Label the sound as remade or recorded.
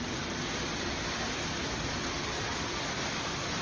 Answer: recorded